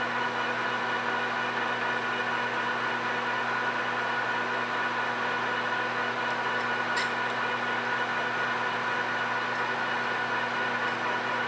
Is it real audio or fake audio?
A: real